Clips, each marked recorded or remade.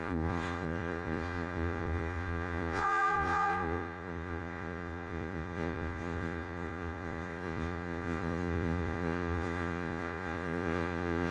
remade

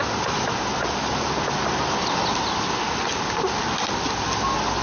recorded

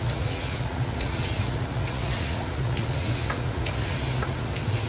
remade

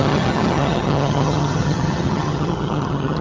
remade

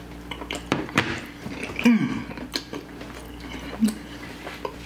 remade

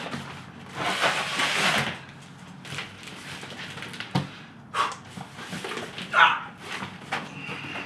recorded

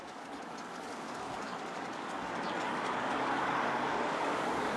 remade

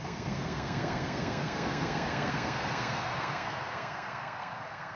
remade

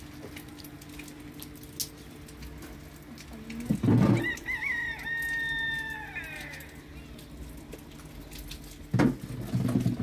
recorded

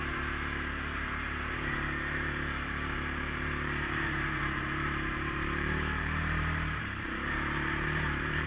remade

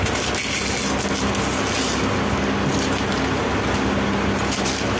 recorded